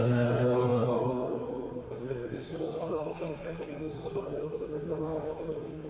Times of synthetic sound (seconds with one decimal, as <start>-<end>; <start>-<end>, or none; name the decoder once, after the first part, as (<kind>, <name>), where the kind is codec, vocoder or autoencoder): 0.0-5.9 (codec, SNAC)